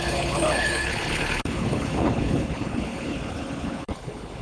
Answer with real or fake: fake